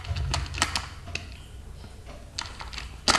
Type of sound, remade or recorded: recorded